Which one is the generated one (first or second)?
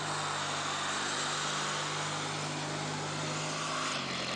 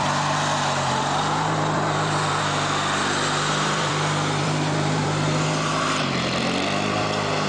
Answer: second